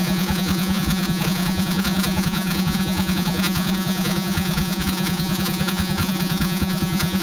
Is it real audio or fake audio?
fake